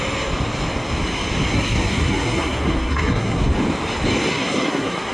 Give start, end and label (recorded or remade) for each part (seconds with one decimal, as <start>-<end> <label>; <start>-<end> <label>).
0.0-1.5 recorded; 1.5-3.4 remade; 3.4-4.3 recorded; 4.3-5.1 remade